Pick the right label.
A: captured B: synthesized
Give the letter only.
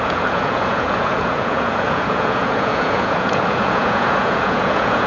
B